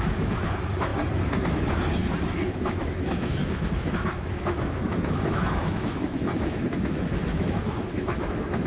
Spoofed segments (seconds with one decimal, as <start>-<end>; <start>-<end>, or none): 0.0-8.7